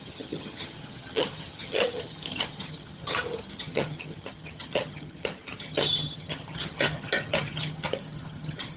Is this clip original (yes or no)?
no